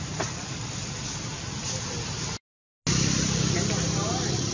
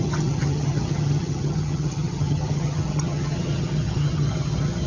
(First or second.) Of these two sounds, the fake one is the second